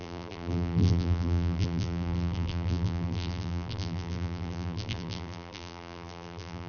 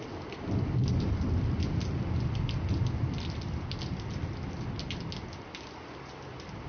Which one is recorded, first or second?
second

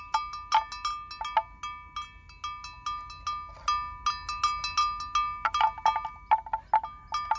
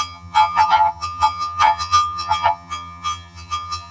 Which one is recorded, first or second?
first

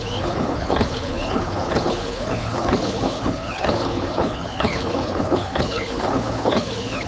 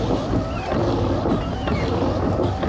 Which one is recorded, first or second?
second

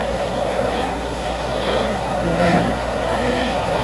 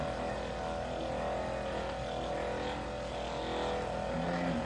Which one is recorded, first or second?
second